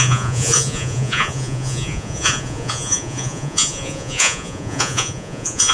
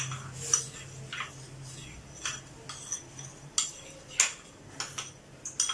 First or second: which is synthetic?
first